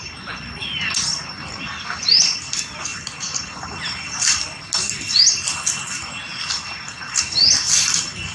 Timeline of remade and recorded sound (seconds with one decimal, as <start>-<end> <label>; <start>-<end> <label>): 0.0-8.3 recorded